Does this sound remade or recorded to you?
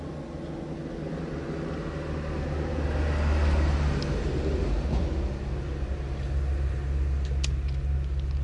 recorded